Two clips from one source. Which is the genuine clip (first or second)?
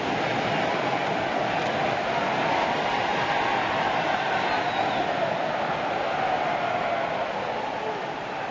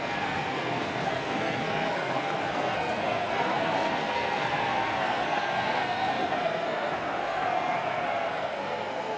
first